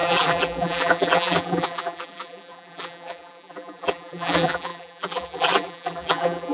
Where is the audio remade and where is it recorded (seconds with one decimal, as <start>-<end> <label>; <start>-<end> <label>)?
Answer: 0.0-6.5 remade

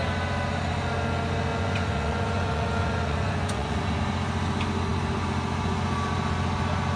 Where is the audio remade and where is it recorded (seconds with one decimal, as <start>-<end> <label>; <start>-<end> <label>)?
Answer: 0.0-1.5 recorded; 1.5-4.0 remade; 4.0-7.0 recorded